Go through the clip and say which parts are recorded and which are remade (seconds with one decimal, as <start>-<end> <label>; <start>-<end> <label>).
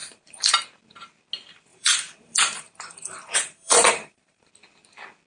0.0-0.5 remade; 0.5-1.7 recorded; 1.7-4.5 remade; 4.5-5.3 recorded